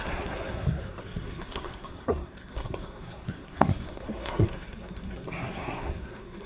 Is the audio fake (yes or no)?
yes